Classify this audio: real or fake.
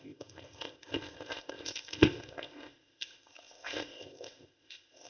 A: fake